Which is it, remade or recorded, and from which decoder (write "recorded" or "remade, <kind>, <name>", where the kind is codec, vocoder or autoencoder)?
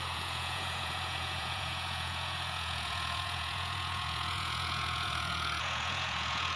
remade, vocoder, Vocos